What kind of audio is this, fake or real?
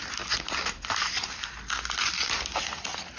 real